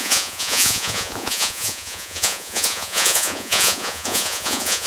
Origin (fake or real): fake